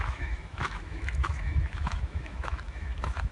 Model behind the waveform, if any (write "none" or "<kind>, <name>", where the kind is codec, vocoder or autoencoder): autoencoder, DAC-VAE